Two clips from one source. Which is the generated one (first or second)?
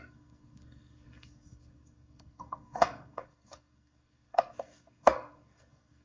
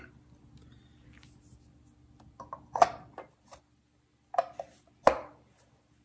first